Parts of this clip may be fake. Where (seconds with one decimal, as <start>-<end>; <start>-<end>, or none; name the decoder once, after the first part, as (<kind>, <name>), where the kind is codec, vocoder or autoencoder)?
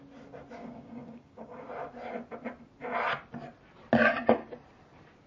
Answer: 0.6-1.7 (codec, DAC)